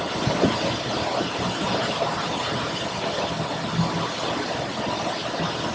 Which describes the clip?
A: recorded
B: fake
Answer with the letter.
A